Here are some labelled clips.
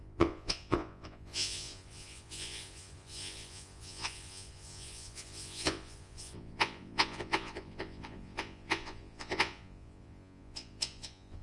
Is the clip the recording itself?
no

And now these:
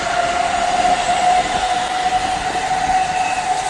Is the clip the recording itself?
yes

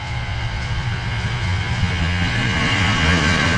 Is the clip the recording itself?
no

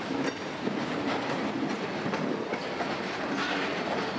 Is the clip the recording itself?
yes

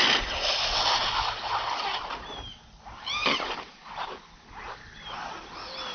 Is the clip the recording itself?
yes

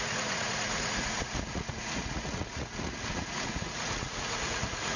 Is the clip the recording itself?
no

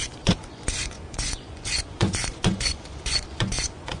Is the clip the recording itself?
no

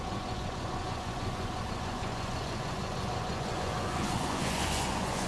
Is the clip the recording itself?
no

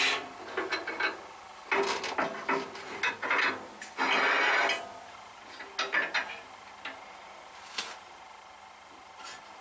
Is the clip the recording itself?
yes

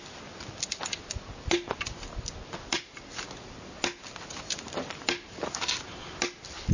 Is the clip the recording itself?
yes